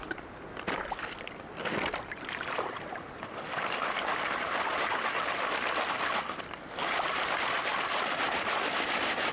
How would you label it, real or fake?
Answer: fake